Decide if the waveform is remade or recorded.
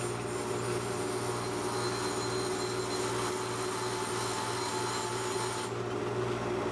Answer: recorded